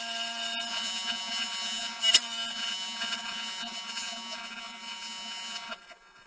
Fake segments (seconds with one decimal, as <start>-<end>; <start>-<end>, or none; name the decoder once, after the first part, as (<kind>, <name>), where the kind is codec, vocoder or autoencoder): 0.7-2.0 (vocoder, Vocos); 2.5-6.3